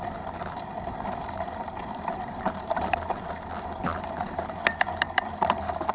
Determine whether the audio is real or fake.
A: fake